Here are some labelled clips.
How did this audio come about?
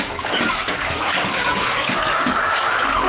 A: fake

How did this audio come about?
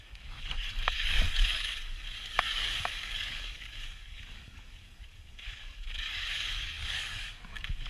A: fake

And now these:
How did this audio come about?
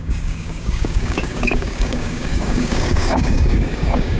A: fake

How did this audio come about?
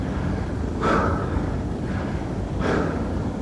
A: fake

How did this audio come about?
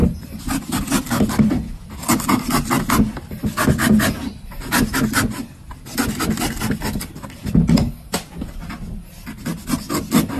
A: real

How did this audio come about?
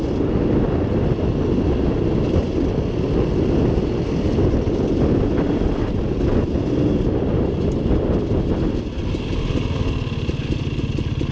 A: real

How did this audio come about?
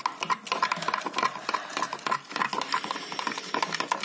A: real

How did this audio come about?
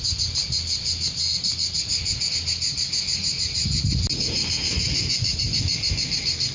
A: real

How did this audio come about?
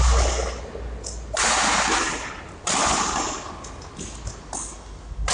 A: real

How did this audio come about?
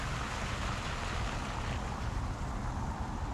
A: real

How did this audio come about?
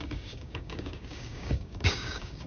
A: fake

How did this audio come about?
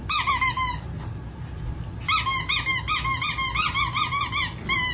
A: real